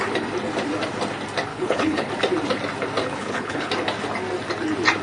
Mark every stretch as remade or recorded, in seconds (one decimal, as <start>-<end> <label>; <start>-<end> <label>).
0.0-1.5 recorded; 1.5-2.1 remade; 2.1-3.0 recorded; 3.0-3.7 remade; 3.7-5.0 recorded